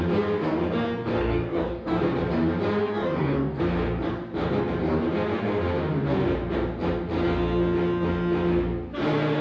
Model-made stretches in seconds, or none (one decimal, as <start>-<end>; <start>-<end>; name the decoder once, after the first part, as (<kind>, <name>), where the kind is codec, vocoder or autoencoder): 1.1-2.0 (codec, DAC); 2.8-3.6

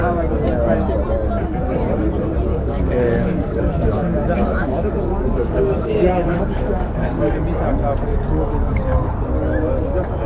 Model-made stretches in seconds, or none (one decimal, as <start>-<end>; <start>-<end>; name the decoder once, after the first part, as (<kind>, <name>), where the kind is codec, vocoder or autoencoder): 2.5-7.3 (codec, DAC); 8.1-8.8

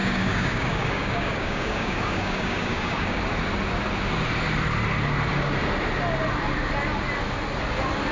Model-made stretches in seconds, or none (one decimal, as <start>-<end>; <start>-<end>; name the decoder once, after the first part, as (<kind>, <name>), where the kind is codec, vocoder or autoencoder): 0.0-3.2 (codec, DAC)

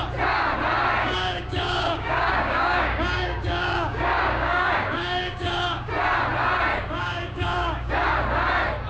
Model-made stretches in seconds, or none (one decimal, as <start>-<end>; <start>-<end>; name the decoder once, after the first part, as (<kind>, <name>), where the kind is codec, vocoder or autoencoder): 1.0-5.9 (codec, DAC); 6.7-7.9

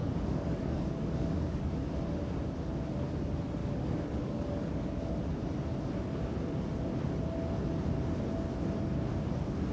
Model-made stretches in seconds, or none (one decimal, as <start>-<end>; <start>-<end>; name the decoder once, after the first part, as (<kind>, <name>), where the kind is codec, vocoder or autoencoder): 0.0-1.7 (codec, DAC); 3.6-5.1